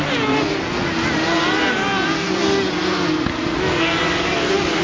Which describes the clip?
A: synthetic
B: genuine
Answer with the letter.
B